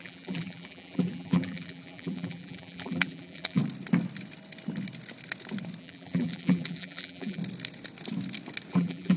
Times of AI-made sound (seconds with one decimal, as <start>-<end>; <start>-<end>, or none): 0.0-3.6; 5.8-7.4; 8.7-9.2